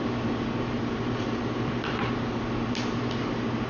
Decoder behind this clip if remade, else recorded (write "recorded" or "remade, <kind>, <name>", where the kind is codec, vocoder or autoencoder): recorded